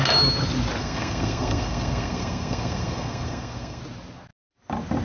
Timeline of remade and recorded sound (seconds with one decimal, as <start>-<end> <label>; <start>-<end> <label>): 0.0-0.8 recorded; 0.8-3.8 remade; 3.8-5.0 recorded